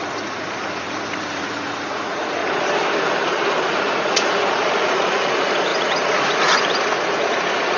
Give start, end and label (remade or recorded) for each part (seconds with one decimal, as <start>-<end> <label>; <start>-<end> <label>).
0.0-2.4 remade; 2.4-3.6 recorded; 3.6-7.8 remade